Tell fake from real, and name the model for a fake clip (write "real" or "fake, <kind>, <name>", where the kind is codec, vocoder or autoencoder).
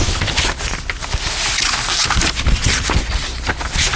real